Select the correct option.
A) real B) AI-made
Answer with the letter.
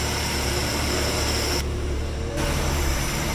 B